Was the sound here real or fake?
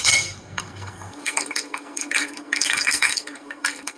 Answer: fake